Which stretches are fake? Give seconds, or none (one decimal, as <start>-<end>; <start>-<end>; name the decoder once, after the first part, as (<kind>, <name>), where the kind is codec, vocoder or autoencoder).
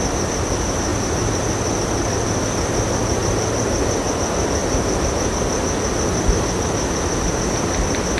none